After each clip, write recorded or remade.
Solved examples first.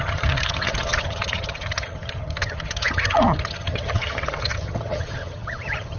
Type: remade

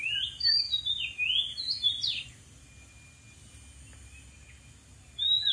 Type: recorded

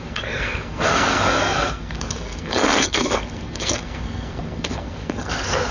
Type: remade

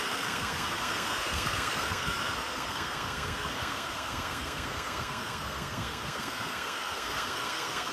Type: remade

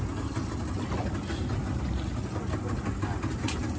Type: recorded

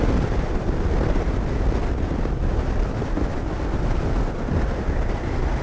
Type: recorded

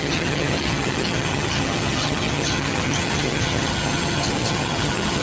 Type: remade